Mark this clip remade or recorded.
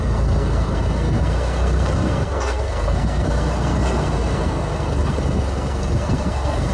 remade